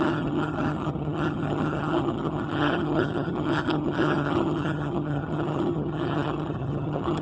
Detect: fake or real fake